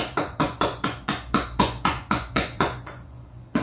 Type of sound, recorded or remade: remade